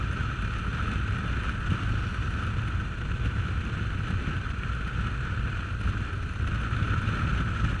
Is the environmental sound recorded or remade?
recorded